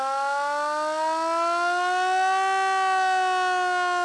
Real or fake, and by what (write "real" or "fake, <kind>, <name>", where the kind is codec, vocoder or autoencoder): real